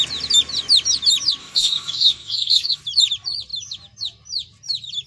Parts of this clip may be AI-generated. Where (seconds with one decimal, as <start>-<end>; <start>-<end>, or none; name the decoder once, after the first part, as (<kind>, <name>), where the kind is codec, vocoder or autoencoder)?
1.4-2.8 (codec, DAC)